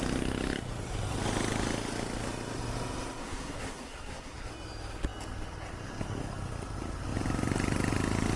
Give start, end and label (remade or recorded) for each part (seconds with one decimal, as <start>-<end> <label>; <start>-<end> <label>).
0.0-3.2 recorded; 3.2-4.5 remade; 4.5-8.4 recorded